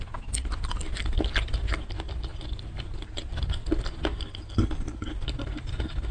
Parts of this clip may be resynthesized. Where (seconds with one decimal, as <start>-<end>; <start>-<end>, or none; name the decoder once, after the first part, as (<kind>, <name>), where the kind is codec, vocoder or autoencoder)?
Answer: none